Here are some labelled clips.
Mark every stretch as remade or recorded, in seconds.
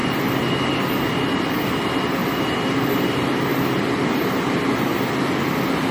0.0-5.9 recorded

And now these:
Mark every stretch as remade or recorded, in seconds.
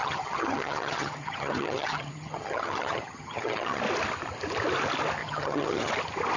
0.0-3.8 remade; 3.8-5.2 recorded; 5.2-5.9 remade; 5.9-6.4 recorded